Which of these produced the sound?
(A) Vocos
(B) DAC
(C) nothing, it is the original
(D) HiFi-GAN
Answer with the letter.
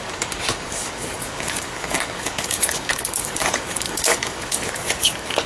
B